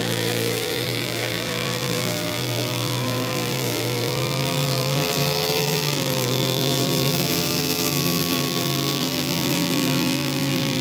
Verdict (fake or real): fake